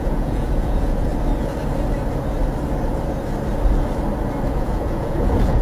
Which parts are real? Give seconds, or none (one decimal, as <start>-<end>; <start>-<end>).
1.1-4.5